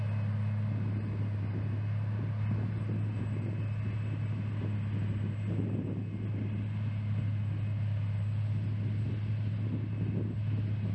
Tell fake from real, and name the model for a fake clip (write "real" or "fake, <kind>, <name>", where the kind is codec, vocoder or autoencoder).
real